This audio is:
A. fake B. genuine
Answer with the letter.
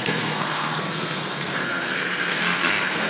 A